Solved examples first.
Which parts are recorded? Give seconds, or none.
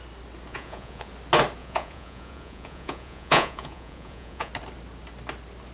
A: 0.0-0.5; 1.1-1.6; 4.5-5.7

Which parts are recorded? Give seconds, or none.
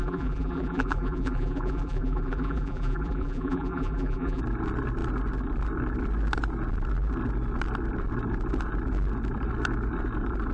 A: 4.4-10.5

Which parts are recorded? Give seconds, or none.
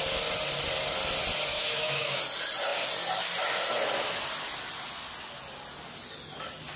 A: 0.0-1.5; 2.2-6.8